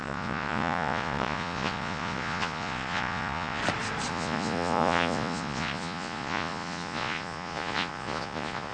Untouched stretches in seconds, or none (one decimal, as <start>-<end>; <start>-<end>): 3.6-4.1